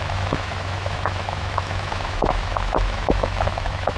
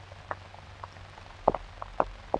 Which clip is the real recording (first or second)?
second